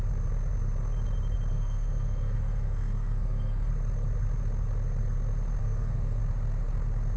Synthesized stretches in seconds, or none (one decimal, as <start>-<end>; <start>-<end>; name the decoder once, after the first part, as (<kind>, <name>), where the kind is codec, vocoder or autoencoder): 1.5-3.7 (codec, SNAC); 5.6-6.2